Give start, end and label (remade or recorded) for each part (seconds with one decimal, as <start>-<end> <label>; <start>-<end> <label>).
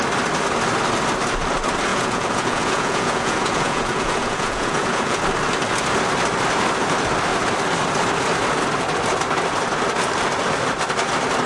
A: 0.0-1.9 recorded; 1.9-5.2 remade; 5.2-11.5 recorded